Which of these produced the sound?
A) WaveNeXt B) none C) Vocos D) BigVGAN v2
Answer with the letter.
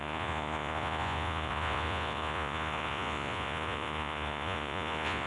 C